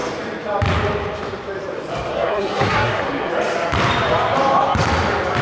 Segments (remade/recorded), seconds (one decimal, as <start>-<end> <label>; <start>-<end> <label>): 0.0-2.1 recorded; 2.1-3.3 remade; 3.3-5.4 recorded

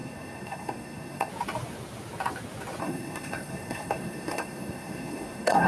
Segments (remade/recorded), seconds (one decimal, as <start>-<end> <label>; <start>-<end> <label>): 0.0-1.3 remade; 1.3-2.8 recorded; 2.8-5.7 remade

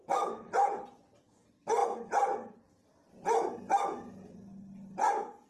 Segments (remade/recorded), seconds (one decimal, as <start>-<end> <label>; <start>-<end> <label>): 0.0-5.5 recorded

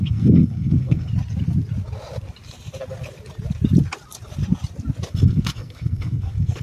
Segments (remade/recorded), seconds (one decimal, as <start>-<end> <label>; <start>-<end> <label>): 0.0-1.1 remade; 1.1-5.1 recorded; 5.1-6.6 remade

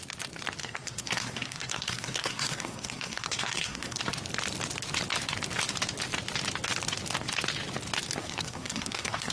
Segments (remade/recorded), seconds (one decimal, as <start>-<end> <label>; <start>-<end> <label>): 0.0-0.6 recorded; 0.6-4.0 remade; 4.0-8.2 recorded; 8.2-9.3 remade